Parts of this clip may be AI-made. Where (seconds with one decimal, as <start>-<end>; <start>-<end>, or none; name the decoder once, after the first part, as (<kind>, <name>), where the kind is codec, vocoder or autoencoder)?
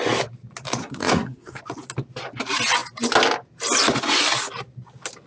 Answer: 0.8-1.6 (codec, SNAC)